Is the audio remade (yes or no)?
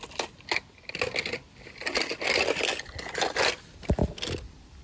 no